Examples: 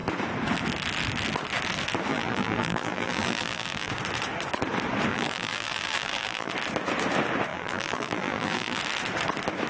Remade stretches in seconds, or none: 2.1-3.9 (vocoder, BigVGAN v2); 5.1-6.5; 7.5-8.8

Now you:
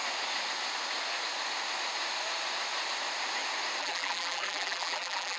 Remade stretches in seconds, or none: 3.8-5.4 (vocoder, BigVGAN v2)

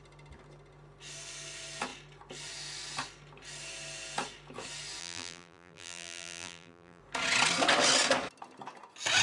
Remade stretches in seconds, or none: 5.0-7.0 (vocoder, BigVGAN v2)

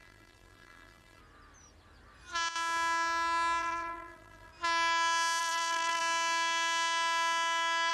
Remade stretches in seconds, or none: 0.0-1.2 (vocoder, BigVGAN v2); 3.6-4.5; 5.4-6.0

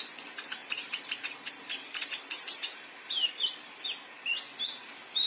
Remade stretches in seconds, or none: 0.6-3.8 (vocoder, BigVGAN v2)

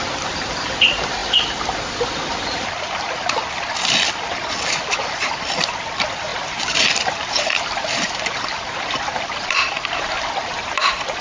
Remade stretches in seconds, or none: 0.0-11.2 (vocoder, BigVGAN v2)

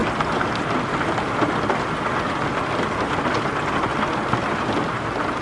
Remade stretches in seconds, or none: none